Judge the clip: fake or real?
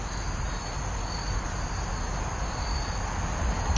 real